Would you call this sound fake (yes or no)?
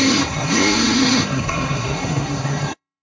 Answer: yes